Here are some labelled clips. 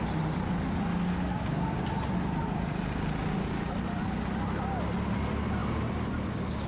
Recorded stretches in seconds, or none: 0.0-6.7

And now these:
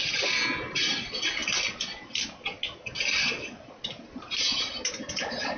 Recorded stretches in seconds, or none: 0.0-5.6

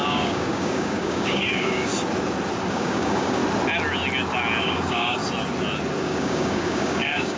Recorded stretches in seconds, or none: 1.9-2.7; 3.4-4.6; 5.2-6.0